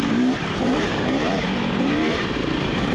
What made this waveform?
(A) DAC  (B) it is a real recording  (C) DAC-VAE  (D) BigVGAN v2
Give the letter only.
D